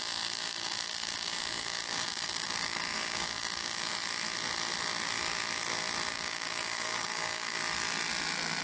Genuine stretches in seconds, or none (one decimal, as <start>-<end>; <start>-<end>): 3.9-6.1; 7.6-8.6